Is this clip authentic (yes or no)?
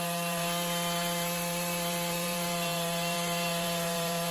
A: no